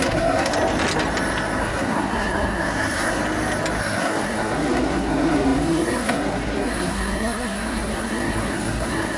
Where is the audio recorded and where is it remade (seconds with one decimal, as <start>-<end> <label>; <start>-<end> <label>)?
0.0-0.5 remade; 0.5-1.6 recorded; 1.6-3.2 remade; 3.2-3.8 recorded; 3.8-9.2 remade